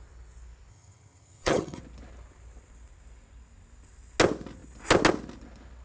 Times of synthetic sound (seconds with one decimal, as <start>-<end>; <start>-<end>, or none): 0.7-1.8